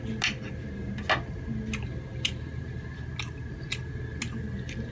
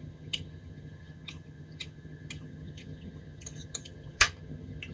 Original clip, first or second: first